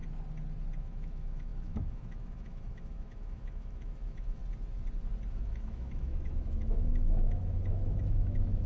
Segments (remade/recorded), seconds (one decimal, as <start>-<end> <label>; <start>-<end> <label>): 0.0-0.8 recorded; 0.8-4.4 remade; 4.4-5.3 recorded; 5.3-8.7 remade